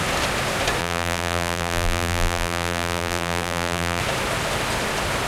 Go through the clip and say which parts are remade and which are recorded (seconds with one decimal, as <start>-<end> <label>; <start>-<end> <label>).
0.0-0.8 recorded; 0.8-4.0 remade; 4.0-5.3 recorded